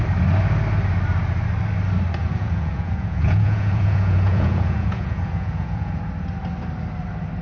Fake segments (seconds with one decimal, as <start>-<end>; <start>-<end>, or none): 2.2-6.0

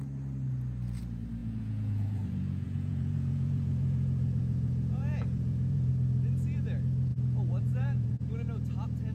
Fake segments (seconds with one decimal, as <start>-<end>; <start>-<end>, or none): 1.4-5.9; 7.1-8.3

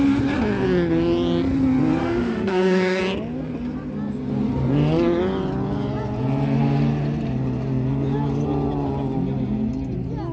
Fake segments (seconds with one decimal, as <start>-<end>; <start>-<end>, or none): 2.0-3.0